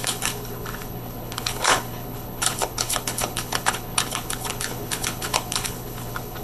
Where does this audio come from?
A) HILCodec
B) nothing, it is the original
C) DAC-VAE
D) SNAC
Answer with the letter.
A